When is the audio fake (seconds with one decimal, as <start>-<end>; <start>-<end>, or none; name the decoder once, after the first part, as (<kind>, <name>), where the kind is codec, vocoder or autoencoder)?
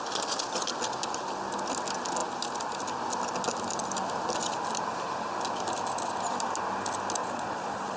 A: 7.2-8.0 (vocoder, Vocos)